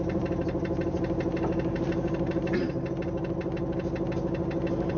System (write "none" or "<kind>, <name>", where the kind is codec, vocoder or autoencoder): none